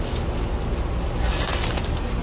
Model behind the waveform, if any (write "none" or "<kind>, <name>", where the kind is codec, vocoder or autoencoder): none